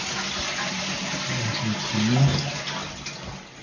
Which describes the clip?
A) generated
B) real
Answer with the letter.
B